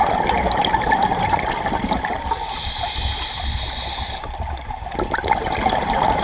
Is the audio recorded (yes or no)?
yes